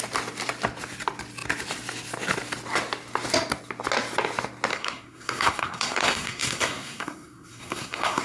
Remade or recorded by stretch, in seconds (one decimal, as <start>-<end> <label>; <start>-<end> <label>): 0.0-4.7 recorded; 4.7-8.2 remade